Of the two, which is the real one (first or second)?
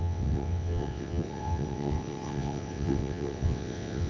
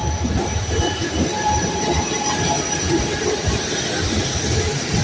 second